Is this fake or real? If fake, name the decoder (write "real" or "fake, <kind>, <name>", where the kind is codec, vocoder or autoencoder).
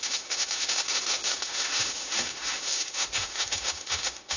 fake, autoencoder, DAC-VAE